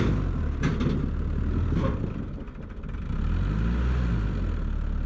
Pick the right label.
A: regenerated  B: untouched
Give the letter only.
B